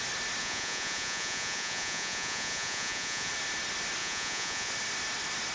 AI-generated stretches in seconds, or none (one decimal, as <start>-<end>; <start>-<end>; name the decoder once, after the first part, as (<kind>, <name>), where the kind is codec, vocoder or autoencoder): 0.4-3.3 (vocoder, Vocos); 4.0-4.7